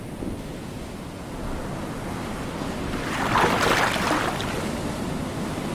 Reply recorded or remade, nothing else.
recorded